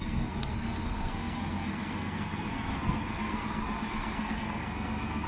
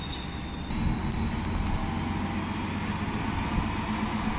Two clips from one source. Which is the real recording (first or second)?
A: second